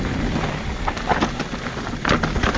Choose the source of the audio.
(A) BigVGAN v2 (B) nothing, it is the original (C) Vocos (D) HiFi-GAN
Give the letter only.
B